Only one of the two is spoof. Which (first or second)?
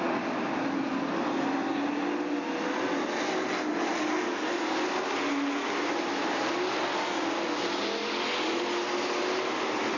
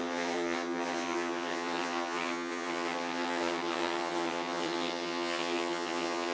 second